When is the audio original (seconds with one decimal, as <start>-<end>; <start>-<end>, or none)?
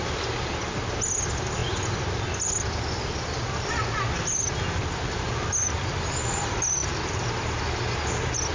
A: 0.0-6.8; 8.0-8.5